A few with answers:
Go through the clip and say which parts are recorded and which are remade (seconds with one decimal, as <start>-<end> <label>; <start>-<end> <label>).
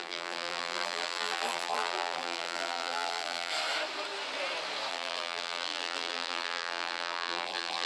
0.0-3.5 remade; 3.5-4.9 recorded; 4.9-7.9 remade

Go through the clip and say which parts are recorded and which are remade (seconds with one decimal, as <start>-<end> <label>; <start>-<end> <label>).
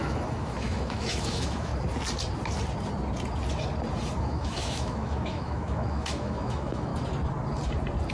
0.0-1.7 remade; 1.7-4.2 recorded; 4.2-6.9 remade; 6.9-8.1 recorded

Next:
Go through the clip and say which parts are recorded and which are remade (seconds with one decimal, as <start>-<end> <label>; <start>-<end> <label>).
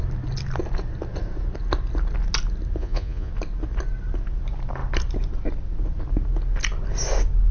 0.0-2.8 recorded; 2.8-3.3 remade; 3.3-7.5 recorded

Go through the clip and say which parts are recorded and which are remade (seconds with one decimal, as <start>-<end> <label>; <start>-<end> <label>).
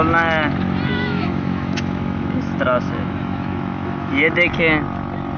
0.0-0.9 recorded; 0.9-4.1 remade; 4.1-5.4 recorded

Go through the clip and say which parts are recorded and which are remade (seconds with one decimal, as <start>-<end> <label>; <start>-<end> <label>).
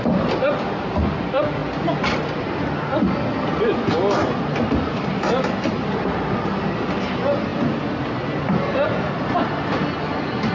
0.0-10.5 recorded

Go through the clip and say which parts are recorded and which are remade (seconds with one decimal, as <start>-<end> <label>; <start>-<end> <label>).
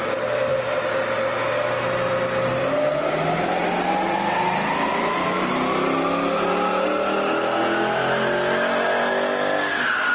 0.0-4.9 recorded; 4.9-5.5 remade; 5.5-10.1 recorded